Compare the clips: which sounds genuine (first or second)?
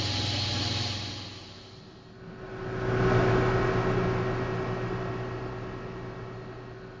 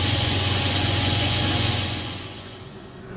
first